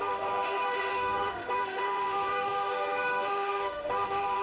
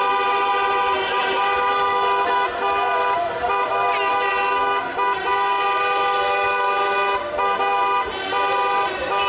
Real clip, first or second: second